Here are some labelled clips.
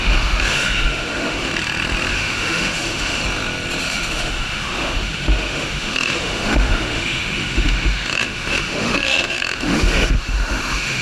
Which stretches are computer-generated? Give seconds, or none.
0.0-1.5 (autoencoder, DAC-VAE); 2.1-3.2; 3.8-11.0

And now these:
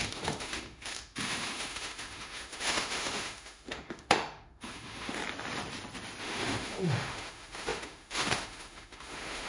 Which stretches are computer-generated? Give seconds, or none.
0.0-5.2 (autoencoder, DAC-VAE); 6.2-9.5

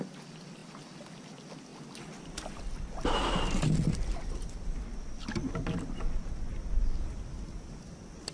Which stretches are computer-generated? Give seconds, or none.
none

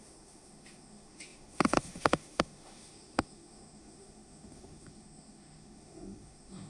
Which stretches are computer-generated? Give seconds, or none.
0.0-6.7 (autoencoder, DAC-VAE)

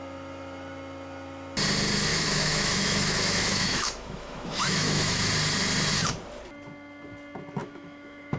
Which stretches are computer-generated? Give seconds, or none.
2.1-5.3 (autoencoder, DAC-VAE); 7.6-8.4

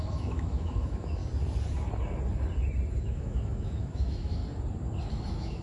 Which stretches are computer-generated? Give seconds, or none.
0.0-1.2 (autoencoder, DAC-VAE); 3.0-4.4; 5.1-5.6

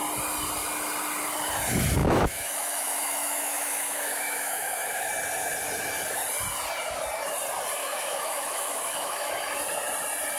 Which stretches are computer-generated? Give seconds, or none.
2.0-5.1 (autoencoder, DAC-VAE); 7.8-9.3